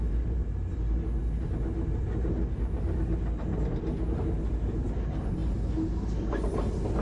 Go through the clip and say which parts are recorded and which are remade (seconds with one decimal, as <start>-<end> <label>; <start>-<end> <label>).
0.0-7.0 recorded